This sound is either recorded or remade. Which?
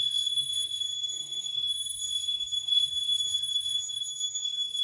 remade